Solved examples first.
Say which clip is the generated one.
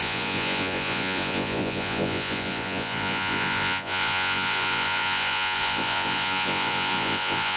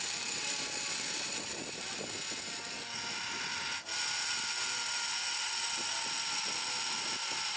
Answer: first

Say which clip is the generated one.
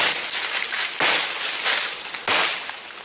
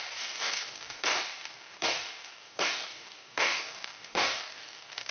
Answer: second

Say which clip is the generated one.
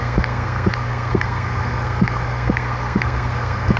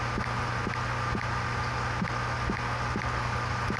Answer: first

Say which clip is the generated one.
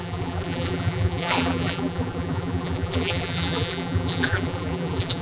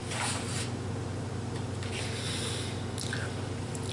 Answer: first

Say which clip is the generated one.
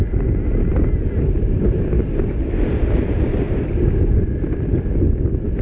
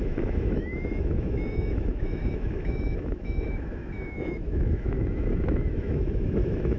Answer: second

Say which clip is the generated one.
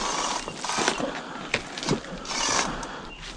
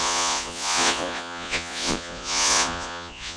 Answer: second